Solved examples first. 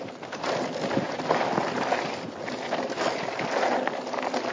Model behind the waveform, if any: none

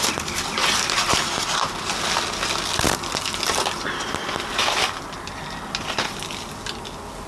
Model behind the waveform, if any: none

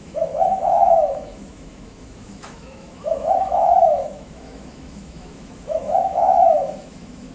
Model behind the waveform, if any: autoencoder, DAC-VAE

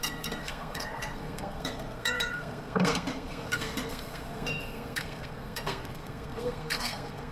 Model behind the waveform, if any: codec, SNAC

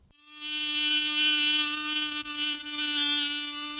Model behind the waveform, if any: none